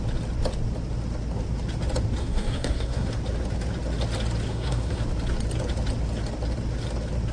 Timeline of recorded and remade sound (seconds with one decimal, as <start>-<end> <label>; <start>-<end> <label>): 0.0-2.2 recorded; 2.2-3.1 remade; 3.1-4.5 recorded; 4.5-5.0 remade; 5.0-7.3 recorded

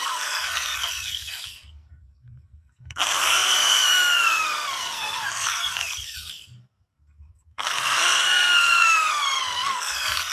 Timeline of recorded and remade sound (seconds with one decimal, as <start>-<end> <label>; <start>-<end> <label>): 0.0-10.3 remade

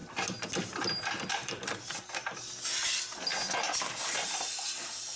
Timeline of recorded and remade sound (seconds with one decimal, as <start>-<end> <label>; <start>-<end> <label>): 0.0-5.2 recorded

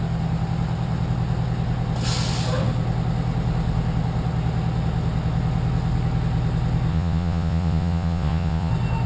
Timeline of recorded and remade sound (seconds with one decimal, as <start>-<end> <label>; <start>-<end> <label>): 0.0-6.9 recorded; 6.9-8.7 remade; 8.7-9.1 recorded

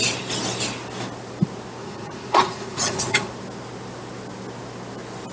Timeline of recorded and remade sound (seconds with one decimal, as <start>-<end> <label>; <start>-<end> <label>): 0.0-1.8 recorded; 1.8-3.3 remade; 3.3-5.3 recorded